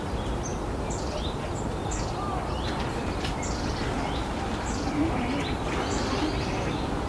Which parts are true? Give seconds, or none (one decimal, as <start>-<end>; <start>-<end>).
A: 0.0-7.1